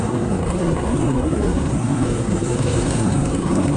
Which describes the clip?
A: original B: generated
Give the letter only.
B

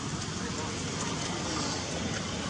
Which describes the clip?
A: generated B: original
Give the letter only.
B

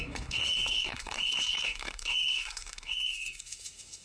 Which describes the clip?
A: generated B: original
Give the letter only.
A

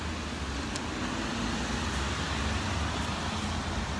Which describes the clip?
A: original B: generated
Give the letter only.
A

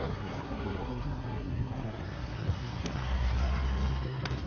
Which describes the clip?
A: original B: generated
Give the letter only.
B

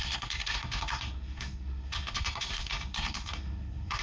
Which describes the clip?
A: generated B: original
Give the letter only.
A